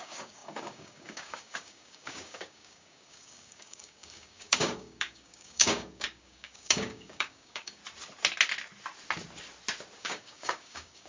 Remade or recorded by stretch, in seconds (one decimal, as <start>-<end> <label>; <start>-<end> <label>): 0.0-7.8 remade; 7.8-10.0 recorded; 10.0-11.1 remade